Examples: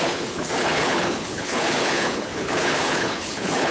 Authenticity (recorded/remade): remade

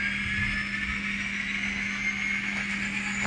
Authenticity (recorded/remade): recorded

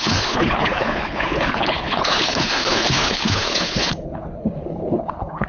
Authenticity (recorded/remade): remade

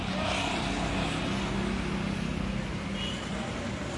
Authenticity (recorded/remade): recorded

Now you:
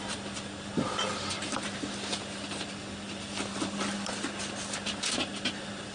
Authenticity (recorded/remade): recorded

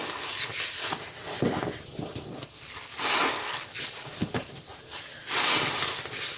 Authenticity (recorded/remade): recorded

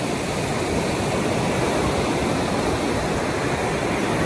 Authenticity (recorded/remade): recorded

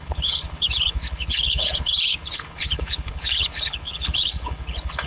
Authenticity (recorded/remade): remade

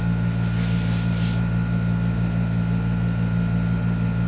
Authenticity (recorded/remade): recorded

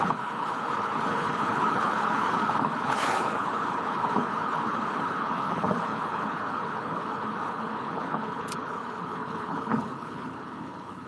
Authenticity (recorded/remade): remade